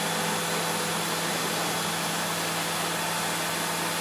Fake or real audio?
real